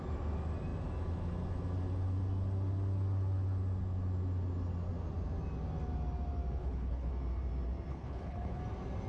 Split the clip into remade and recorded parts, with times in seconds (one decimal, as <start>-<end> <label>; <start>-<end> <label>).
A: 0.0-6.6 recorded; 6.6-7.1 remade; 7.1-7.9 recorded; 7.9-8.6 remade; 8.6-9.1 recorded